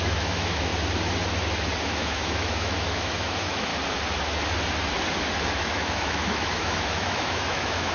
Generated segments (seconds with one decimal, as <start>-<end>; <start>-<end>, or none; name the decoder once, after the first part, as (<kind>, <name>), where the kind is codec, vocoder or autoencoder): 0.0-0.7 (autoencoder, DAC-VAE); 1.8-3.7; 5.6-7.9

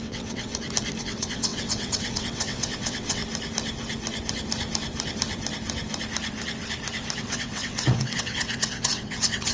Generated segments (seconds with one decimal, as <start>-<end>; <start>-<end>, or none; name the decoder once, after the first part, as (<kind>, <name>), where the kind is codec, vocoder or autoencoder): 0.0-0.5 (vocoder, WaveNeXt); 1.0-3.2; 7.2-9.5

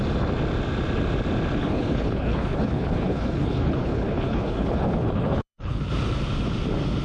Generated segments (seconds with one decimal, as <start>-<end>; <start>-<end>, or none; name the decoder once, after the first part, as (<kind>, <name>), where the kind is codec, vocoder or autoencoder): 1.6-5.8 (codec, HILCodec)

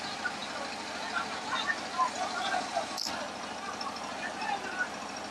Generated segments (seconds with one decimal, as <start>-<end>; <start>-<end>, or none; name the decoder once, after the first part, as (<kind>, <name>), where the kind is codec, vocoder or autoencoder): none

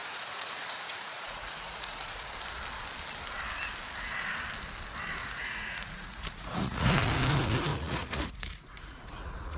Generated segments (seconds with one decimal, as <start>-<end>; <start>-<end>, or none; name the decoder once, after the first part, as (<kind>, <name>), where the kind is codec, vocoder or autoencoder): 0.0-2.3 (vocoder, Vocos); 5.2-6.9; 7.7-9.6